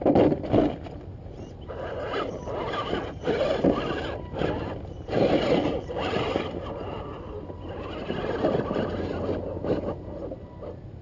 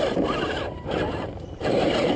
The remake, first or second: second